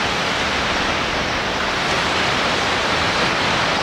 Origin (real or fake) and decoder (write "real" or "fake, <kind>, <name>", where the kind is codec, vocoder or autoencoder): fake, vocoder, BigVGAN v2